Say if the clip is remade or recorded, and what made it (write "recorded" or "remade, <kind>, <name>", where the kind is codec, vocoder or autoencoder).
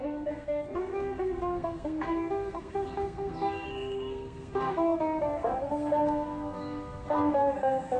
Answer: remade, codec, SNAC